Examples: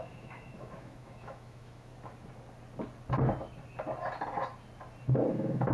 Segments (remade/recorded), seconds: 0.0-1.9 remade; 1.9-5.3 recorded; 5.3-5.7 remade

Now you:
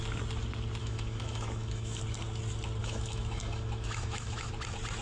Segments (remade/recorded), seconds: 0.0-0.8 recorded; 0.8-2.0 remade; 2.0-2.8 recorded; 2.8-4.5 remade; 4.5-5.0 recorded

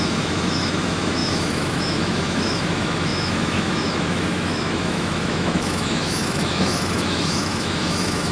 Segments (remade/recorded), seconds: 0.0-8.3 remade

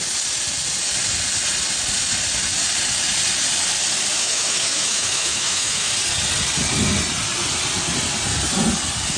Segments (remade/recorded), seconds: 0.0-4.2 recorded; 4.2-5.9 remade; 5.9-9.2 recorded